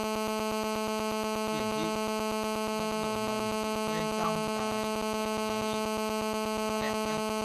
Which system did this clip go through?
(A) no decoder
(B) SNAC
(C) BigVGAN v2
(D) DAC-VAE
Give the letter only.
D